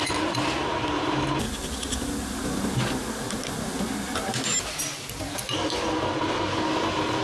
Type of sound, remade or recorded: recorded